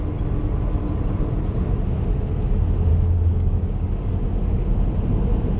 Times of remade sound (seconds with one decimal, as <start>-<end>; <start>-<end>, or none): 2.9-4.1